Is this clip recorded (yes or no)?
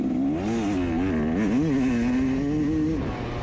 yes